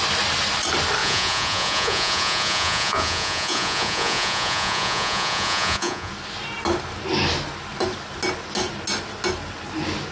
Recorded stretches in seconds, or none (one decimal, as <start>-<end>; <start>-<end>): 0.0-1.0; 6.1-10.1